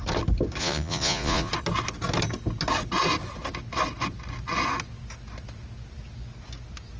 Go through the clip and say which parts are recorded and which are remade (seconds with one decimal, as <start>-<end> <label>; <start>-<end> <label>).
0.0-0.6 recorded; 0.6-1.5 remade; 1.5-7.0 recorded